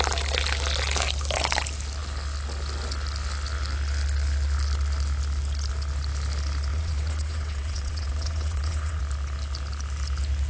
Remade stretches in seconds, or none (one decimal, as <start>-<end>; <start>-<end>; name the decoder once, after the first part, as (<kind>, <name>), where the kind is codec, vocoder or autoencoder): 6.7-9.0 (vocoder, WaveNeXt)